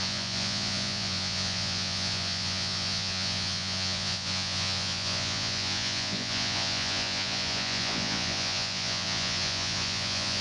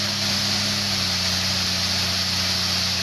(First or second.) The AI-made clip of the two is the first